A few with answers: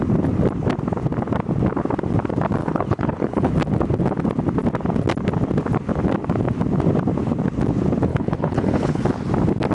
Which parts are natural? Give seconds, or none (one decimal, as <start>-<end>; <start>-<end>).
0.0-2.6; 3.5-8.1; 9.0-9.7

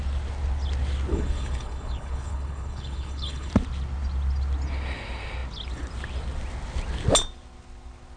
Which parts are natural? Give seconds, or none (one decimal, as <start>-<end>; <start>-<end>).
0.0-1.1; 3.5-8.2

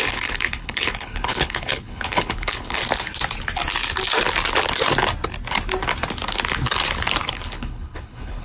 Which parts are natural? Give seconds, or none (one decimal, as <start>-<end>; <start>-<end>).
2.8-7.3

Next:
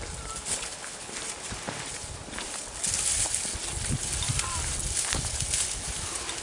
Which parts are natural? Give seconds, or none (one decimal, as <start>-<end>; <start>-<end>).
0.0-0.5; 1.1-6.4

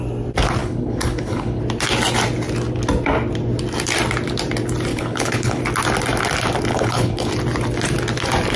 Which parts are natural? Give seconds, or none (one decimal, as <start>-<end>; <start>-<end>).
0.0-0.6; 1.6-4.9; 5.6-6.7; 7.3-8.6

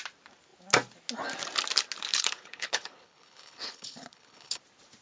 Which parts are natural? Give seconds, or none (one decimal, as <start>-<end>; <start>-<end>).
0.0-2.1; 4.6-5.0